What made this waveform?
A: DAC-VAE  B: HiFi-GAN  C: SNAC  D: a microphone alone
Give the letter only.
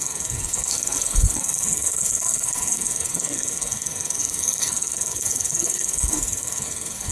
C